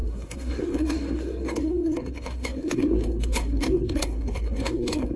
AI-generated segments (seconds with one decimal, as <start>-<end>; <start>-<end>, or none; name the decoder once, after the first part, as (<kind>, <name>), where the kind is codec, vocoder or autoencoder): 0.0-5.2 (codec, SNAC)